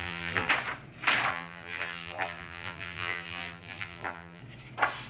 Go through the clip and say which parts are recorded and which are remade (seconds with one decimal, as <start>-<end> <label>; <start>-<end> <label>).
0.0-0.5 remade; 0.5-1.3 recorded; 1.3-4.4 remade; 4.4-5.1 recorded